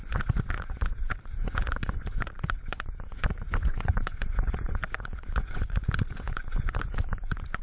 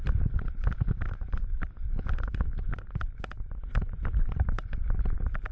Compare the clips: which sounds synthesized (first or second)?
first